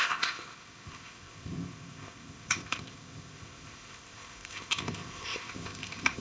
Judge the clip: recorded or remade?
remade